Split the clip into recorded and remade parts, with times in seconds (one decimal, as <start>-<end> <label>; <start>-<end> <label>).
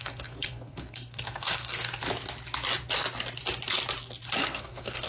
0.0-2.0 remade; 2.0-4.4 recorded; 4.4-5.1 remade